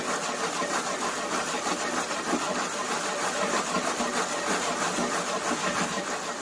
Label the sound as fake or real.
real